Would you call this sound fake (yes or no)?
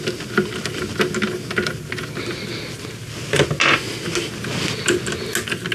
no